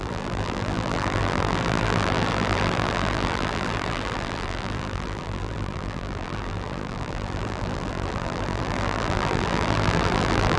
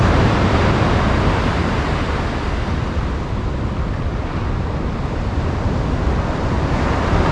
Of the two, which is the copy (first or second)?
first